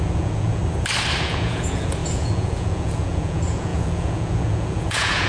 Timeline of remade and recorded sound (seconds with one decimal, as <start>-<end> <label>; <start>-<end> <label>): 0.0-0.6 remade; 0.6-1.2 recorded; 1.2-5.3 remade